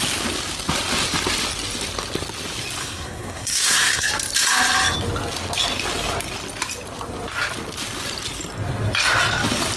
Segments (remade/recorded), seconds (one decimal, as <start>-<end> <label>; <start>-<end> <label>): 0.0-2.8 recorded; 2.8-4.1 remade; 4.1-9.8 recorded